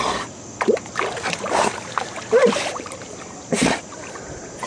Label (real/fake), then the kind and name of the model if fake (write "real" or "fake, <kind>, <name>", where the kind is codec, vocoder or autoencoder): real